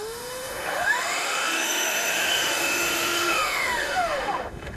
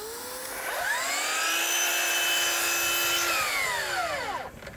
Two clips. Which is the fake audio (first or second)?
first